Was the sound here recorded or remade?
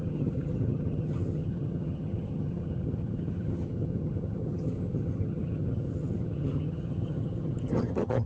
remade